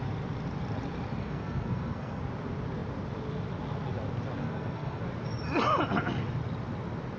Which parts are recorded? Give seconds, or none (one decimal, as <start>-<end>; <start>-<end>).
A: 0.0-1.2; 2.2-4.4; 5.0-7.2